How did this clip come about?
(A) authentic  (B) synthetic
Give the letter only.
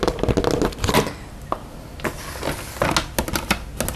A